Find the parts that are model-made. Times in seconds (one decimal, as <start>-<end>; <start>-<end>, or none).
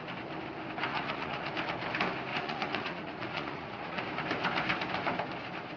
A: 0.9-1.5; 2.3-4.0